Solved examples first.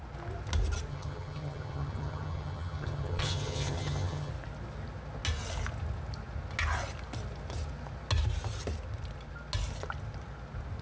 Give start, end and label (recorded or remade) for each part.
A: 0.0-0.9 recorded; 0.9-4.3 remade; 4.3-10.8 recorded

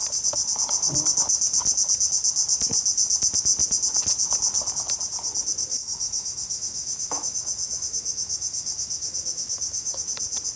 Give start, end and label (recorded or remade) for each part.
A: 0.0-5.7 recorded; 5.7-10.0 remade; 10.0-10.6 recorded

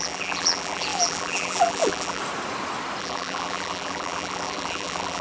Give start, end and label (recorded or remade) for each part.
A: 0.0-2.2 remade; 2.2-3.0 recorded; 3.0-5.2 remade

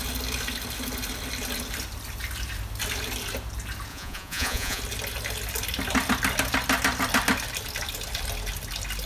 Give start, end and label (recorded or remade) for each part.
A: 0.0-3.9 recorded; 3.9-4.8 remade; 4.8-9.1 recorded

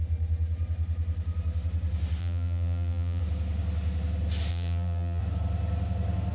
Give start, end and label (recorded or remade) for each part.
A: 0.0-2.2 recorded; 2.2-3.2 remade; 3.2-4.5 recorded; 4.5-5.2 remade; 5.2-6.3 recorded

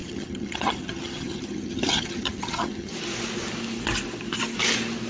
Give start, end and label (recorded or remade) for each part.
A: 0.0-2.9 remade; 2.9-5.1 recorded

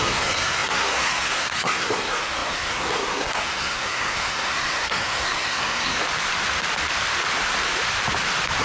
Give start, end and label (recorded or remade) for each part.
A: 0.0-6.0 remade; 6.0-8.6 recorded

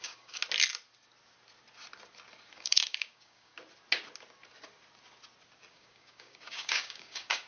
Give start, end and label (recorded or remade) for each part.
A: 0.0-0.4 remade; 0.4-2.5 recorded; 2.5-3.5 remade; 3.5-5.7 recorded; 5.7-7.5 remade